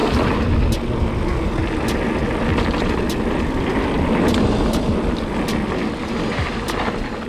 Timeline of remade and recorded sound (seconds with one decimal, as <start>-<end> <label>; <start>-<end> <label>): 0.0-2.5 recorded; 2.5-4.0 remade; 4.0-7.3 recorded